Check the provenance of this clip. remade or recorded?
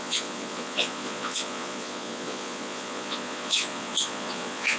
remade